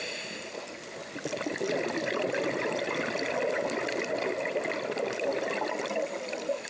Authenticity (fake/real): real